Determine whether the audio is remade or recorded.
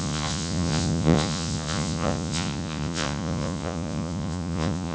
remade